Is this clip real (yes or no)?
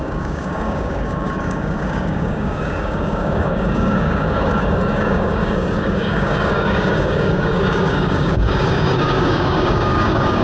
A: no